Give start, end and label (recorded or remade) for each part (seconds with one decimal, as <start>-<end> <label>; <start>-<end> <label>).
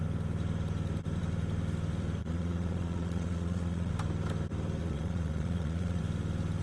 0.0-2.2 recorded; 2.2-3.9 remade; 3.9-4.8 recorded; 4.8-6.0 remade; 6.0-6.6 recorded